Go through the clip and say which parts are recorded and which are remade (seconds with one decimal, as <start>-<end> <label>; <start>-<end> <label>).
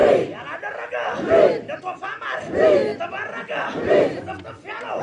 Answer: 0.0-5.0 recorded